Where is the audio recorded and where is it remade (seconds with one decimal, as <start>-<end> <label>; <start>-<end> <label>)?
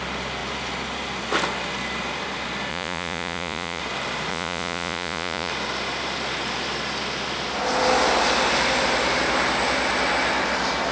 0.0-2.7 recorded; 2.7-3.8 remade; 3.8-4.3 recorded; 4.3-5.5 remade; 5.5-10.9 recorded